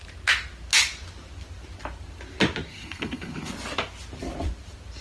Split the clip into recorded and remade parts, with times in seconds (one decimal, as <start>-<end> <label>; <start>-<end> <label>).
0.0-2.7 recorded; 2.7-3.5 remade; 3.5-5.0 recorded